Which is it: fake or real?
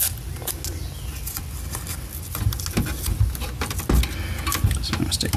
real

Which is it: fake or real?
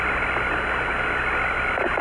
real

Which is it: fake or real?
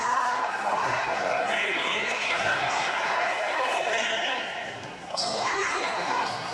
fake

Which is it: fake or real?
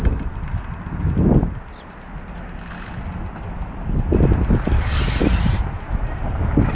real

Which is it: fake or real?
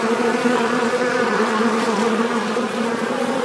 fake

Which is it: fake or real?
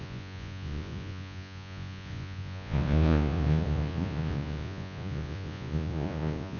fake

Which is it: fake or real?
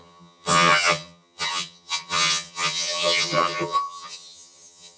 fake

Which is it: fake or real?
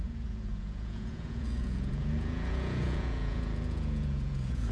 fake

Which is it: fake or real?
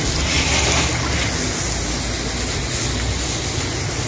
real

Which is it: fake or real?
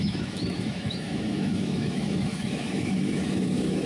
fake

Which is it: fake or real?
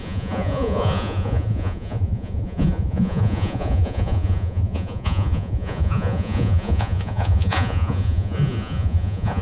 fake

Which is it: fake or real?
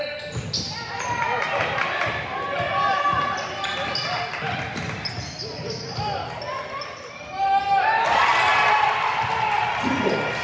real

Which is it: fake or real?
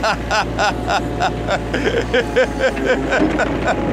real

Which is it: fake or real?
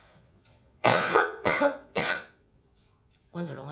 fake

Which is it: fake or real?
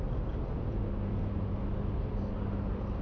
real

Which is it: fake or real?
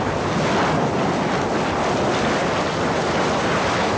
real